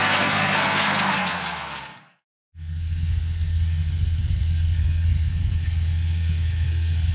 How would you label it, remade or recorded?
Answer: remade